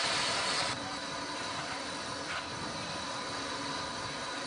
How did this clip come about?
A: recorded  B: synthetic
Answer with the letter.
A